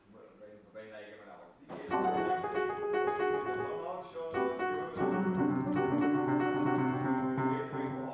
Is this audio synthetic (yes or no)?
no